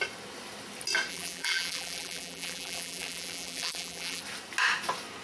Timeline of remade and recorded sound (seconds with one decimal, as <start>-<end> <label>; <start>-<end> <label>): 0.0-1.1 recorded; 1.1-4.2 remade; 4.2-5.2 recorded